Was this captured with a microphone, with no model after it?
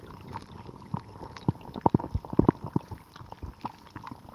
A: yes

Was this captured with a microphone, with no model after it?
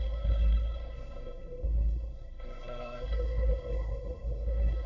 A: no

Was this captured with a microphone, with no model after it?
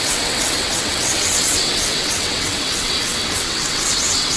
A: no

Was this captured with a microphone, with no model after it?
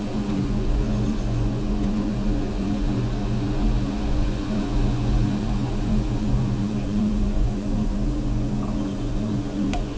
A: no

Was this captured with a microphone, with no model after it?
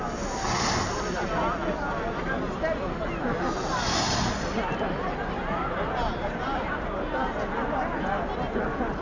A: yes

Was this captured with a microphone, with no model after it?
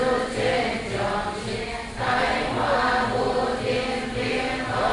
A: yes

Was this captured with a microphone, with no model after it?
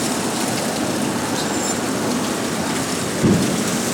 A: yes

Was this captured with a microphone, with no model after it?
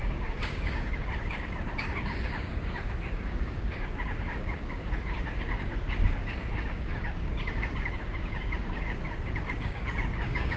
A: no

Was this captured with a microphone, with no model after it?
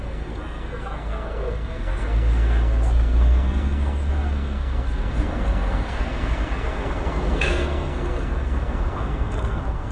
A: no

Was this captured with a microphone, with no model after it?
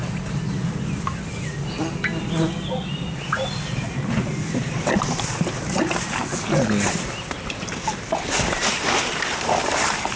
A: yes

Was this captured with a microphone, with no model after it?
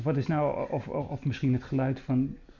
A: yes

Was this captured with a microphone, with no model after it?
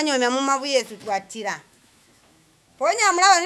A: no